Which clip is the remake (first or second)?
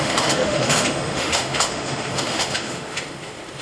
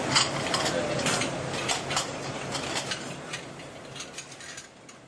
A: first